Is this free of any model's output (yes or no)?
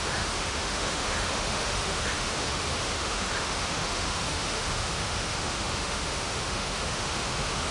no